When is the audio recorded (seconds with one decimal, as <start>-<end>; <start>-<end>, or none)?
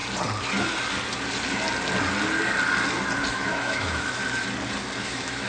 0.0-3.3; 4.2-5.0